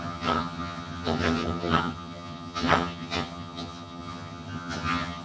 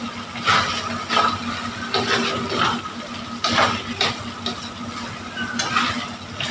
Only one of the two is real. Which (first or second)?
second